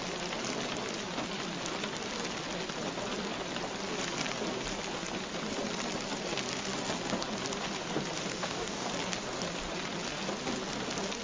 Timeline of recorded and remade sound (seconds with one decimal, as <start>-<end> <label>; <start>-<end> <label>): 0.0-8.4 recorded; 8.4-8.9 remade; 8.9-11.2 recorded